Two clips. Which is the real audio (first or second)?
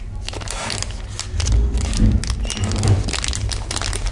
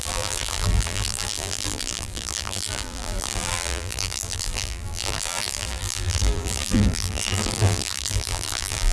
first